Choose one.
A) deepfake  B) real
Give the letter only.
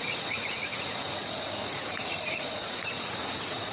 A